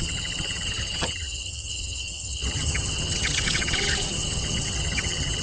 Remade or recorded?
remade